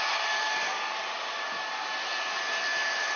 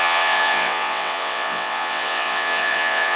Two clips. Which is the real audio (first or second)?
first